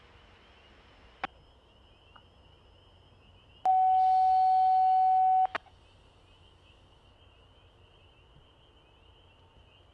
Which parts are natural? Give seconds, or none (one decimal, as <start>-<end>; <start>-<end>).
0.0-9.9